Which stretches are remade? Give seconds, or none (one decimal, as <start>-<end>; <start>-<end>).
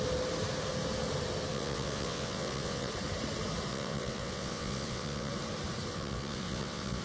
1.5-2.9; 3.7-5.3; 5.9-7.0